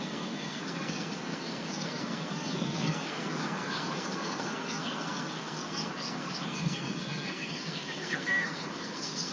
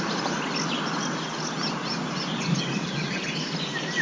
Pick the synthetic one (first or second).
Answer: first